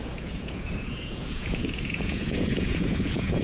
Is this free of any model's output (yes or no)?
no